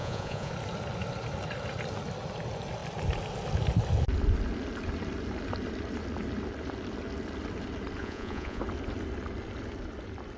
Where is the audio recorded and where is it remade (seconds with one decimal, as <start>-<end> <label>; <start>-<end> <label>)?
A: 0.0-0.5 remade; 0.5-8.0 recorded; 8.0-8.6 remade; 8.6-10.4 recorded

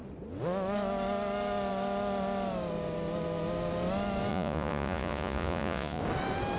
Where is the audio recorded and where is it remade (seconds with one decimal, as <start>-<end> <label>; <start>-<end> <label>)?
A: 0.0-4.3 recorded; 4.3-6.0 remade; 6.0-6.6 recorded

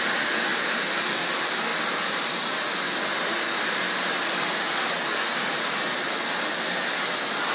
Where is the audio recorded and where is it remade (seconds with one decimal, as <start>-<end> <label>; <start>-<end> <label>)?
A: 0.0-7.5 recorded

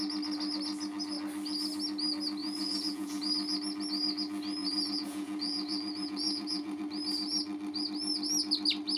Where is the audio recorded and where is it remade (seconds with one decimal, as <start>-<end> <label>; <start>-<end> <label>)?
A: 0.0-2.4 recorded; 2.4-3.2 remade; 3.2-4.6 recorded; 4.6-6.8 remade; 6.8-9.0 recorded

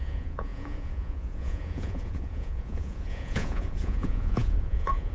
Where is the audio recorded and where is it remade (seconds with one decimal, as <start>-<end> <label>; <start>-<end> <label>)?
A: 0.0-5.1 remade